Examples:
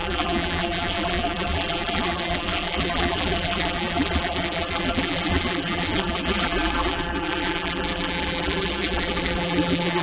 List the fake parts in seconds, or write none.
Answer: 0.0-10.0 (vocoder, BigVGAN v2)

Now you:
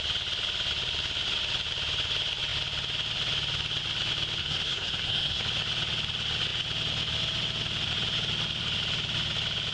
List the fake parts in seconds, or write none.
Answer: 4.4-5.4 (codec, SNAC)

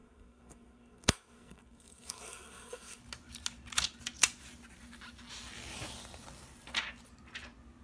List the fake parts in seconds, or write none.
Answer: 0.0-3.0 (codec, SNAC)

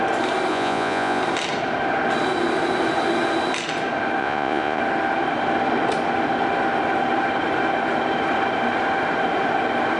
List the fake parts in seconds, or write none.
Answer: 0.5-1.2 (vocoder, Vocos); 4.2-4.8

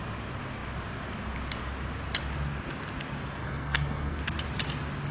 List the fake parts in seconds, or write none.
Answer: 3.4-4.2 (codec, SNAC)

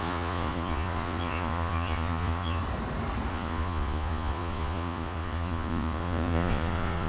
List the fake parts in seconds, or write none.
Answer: 0.0-2.6 (vocoder, Vocos); 3.3-7.1

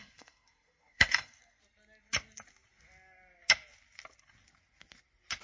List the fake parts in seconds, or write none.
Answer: 0.0-1.6 (codec, SNAC)

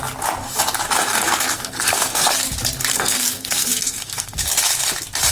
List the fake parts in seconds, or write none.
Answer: 1.1-2.3 (codec, SNAC); 2.9-4.4